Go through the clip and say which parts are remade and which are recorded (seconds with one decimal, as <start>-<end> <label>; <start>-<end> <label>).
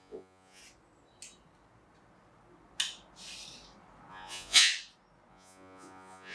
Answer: 0.0-0.6 remade; 0.6-4.1 recorded; 4.1-4.7 remade; 4.7-5.3 recorded; 5.3-6.3 remade